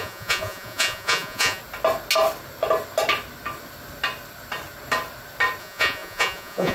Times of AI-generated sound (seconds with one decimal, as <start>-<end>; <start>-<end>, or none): 0.0-1.6; 5.6-6.7